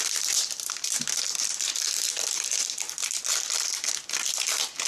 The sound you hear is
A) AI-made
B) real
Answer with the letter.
B